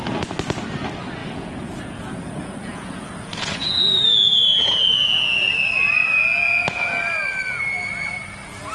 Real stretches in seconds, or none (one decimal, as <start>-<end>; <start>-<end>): 0.0-1.2; 5.5-6.0; 6.9-8.7